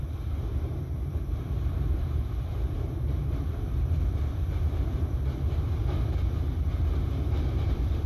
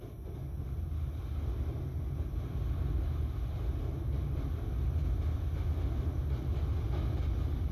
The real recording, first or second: second